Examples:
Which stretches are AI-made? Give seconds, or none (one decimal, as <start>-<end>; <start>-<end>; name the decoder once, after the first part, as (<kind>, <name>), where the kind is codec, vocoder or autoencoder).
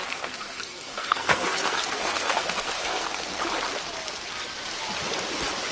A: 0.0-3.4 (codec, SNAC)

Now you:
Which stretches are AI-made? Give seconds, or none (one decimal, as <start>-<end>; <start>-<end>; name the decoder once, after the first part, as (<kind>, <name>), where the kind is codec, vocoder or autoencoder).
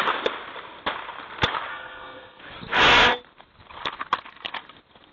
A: 1.7-2.4 (codec, SNAC)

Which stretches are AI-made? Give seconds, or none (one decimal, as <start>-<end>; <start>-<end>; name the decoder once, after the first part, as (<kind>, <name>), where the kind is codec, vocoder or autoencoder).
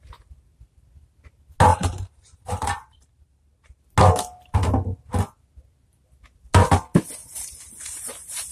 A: 1.7-3.8 (vocoder, BigVGAN v2); 7.2-8.5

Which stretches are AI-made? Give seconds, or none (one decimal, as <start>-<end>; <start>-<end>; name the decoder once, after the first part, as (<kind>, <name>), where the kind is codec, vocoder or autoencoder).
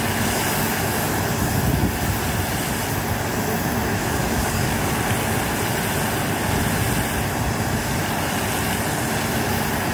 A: 4.0-4.9 (codec, DAC)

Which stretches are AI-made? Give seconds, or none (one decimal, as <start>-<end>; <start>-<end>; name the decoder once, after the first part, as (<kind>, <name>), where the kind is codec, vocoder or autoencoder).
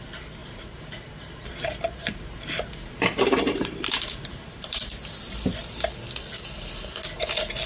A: 0.4-5.0 (vocoder, BigVGAN v2)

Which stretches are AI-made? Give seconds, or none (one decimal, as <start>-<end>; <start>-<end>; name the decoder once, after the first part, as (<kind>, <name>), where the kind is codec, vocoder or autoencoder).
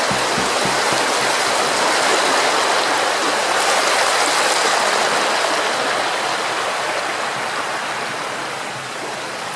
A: none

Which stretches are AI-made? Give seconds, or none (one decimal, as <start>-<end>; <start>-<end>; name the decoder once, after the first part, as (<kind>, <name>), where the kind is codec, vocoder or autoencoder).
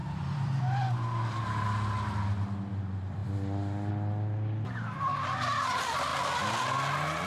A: 0.0-0.6 (vocoder, BigVGAN v2)